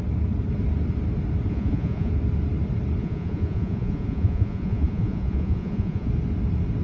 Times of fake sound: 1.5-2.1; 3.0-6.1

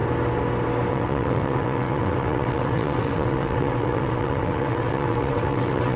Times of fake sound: 0.9-6.0

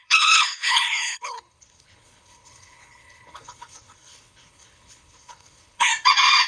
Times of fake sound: 0.0-5.9

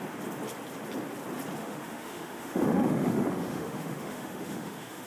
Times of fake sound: 1.6-5.1